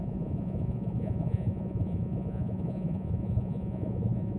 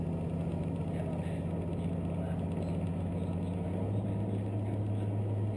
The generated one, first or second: first